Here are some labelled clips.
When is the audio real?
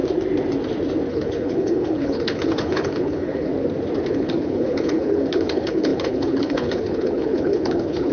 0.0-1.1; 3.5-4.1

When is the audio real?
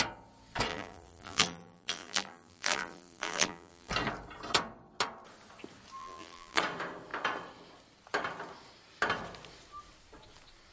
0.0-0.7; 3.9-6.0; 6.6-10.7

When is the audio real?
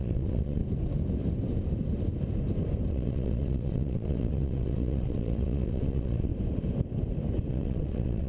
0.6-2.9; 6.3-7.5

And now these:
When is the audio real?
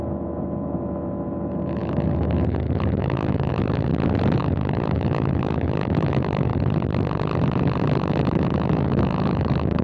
3.9-4.4; 6.5-8.0